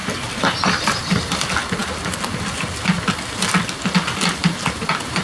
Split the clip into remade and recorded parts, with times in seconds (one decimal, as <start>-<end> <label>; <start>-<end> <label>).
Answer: 0.0-5.2 recorded